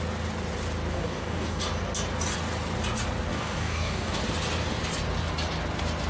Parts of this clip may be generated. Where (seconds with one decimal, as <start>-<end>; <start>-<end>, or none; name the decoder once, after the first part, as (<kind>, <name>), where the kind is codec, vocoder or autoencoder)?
0.9-1.6 (codec, DAC); 3.3-4.2